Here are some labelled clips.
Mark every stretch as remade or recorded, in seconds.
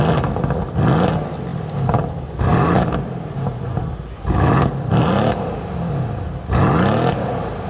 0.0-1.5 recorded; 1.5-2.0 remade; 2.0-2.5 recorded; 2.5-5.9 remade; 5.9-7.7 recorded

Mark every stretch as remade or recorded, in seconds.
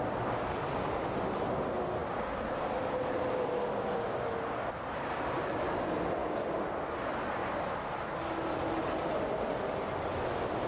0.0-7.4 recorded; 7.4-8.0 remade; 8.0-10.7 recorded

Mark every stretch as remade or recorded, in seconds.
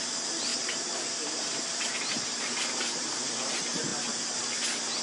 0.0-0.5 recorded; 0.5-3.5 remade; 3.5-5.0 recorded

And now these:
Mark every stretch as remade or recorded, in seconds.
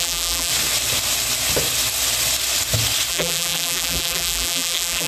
0.0-0.5 remade; 0.5-3.1 recorded; 3.1-5.1 remade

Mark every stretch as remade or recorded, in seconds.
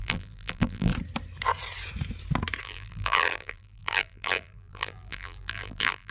0.0-0.9 remade; 0.9-2.6 recorded; 2.6-6.1 remade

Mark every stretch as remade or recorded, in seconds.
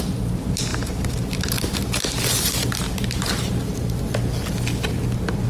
0.0-0.7 recorded; 0.7-4.0 remade; 4.0-5.5 recorded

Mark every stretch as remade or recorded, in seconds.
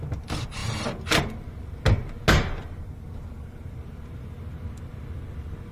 0.0-5.7 recorded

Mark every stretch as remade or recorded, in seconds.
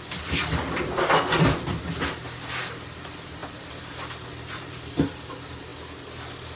0.0-5.7 remade; 5.7-6.6 recorded